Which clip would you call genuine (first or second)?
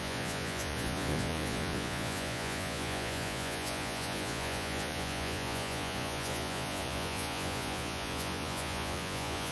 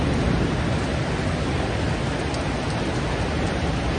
second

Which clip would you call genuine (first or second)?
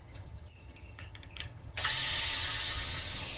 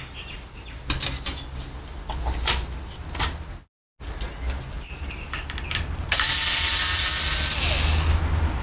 second